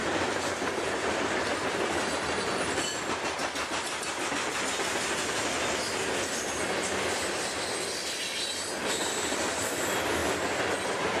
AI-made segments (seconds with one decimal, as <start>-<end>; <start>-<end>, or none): none